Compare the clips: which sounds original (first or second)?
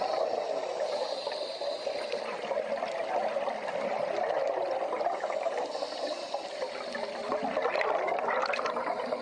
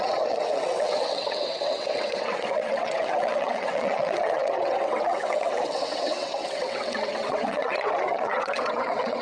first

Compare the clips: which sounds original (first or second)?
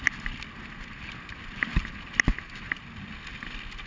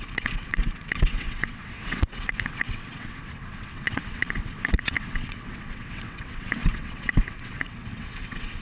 first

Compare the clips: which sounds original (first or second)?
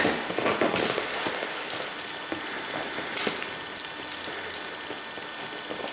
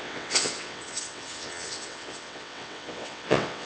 first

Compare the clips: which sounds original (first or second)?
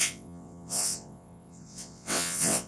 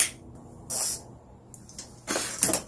second